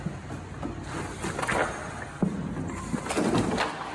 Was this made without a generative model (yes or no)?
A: yes